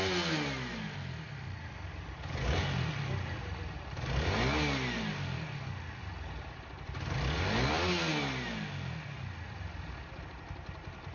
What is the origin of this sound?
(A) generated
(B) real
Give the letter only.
B